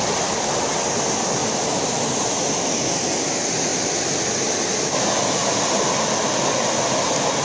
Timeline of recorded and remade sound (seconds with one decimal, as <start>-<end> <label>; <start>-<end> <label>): 0.0-1.4 recorded; 1.4-3.1 remade; 3.1-7.4 recorded